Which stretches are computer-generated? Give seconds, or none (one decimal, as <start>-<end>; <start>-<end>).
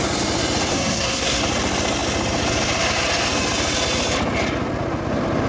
0.7-1.4